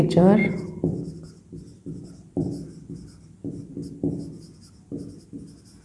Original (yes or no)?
yes